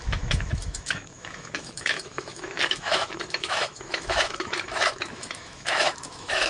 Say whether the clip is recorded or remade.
remade